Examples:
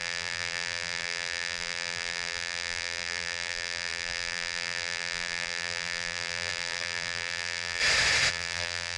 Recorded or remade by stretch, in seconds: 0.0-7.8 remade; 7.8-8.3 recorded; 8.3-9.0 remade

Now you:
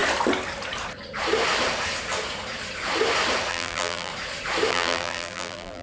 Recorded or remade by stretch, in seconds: 0.0-3.5 recorded; 3.5-4.1 remade; 4.1-4.7 recorded; 4.7-5.8 remade

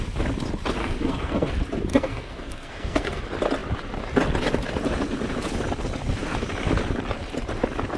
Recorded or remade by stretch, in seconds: 0.0-0.8 recorded; 0.8-1.5 remade; 1.5-1.9 recorded; 1.9-3.2 remade; 3.2-8.0 recorded

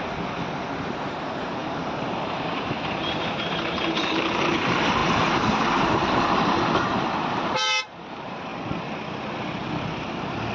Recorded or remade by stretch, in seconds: 0.0-8.5 remade; 8.5-10.5 recorded